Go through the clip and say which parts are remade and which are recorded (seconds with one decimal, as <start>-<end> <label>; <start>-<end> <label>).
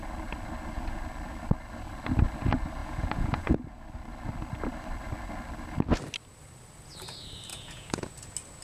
0.0-2.8 recorded; 2.8-3.6 remade; 3.6-7.5 recorded; 7.5-8.1 remade; 8.1-8.6 recorded